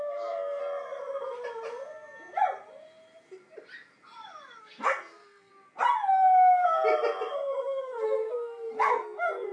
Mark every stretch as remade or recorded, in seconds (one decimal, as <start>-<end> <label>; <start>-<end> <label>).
0.0-0.6 remade; 0.6-4.6 recorded; 4.6-5.5 remade; 5.5-7.3 recorded; 7.3-9.5 remade